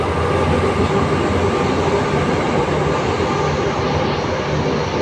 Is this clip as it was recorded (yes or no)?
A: yes